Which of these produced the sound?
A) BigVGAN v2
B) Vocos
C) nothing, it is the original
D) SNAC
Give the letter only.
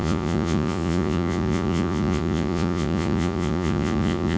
B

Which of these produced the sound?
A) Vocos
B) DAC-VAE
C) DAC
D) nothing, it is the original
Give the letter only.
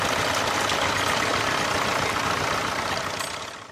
D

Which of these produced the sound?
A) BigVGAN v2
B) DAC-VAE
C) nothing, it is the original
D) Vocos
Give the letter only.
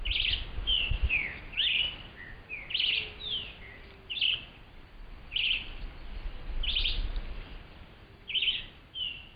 C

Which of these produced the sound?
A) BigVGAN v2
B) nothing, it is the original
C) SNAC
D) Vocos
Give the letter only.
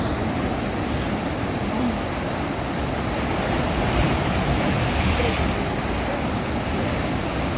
B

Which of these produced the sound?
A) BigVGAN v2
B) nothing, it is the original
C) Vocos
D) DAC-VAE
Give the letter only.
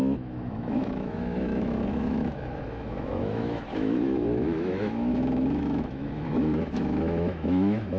D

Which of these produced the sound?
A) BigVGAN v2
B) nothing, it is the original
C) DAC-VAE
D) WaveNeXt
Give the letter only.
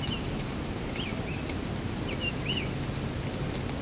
B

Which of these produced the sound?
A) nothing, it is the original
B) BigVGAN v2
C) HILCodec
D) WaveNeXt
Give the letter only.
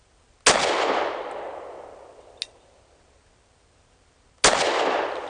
A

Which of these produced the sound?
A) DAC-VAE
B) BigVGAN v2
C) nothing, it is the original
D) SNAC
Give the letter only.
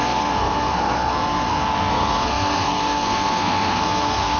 D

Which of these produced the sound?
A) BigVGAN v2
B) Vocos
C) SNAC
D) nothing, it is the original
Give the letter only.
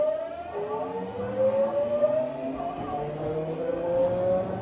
D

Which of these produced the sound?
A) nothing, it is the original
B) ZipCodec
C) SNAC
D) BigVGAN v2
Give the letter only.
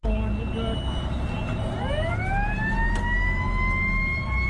A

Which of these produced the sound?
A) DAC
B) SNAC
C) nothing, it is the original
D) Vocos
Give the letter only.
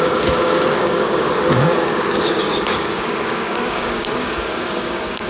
A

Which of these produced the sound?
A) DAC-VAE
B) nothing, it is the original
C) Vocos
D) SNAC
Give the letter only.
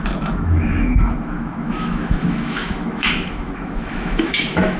A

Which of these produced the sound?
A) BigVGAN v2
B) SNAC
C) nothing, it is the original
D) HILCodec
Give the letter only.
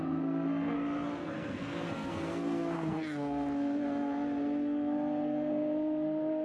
B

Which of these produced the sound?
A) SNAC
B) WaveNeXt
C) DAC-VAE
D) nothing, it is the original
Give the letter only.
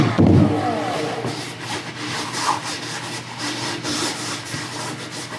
D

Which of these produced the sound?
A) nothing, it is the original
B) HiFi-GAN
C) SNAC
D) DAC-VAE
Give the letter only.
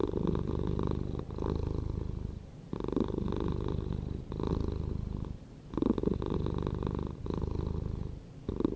A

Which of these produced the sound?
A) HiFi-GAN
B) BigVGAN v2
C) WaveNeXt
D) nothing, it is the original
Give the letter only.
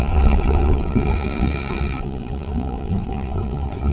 C